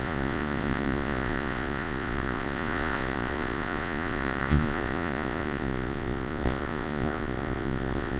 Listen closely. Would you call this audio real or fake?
fake